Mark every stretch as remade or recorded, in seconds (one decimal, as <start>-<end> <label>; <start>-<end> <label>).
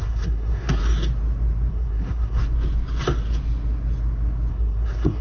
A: 0.0-0.8 remade; 0.8-1.7 recorded; 1.7-2.4 remade; 2.4-4.5 recorded; 4.5-5.2 remade